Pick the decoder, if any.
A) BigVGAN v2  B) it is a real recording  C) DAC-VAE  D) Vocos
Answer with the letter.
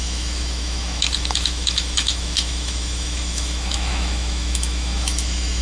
C